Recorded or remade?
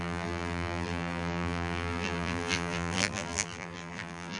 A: remade